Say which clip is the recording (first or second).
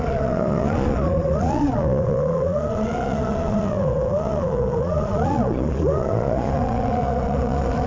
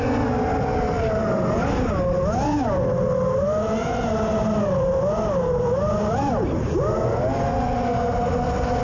second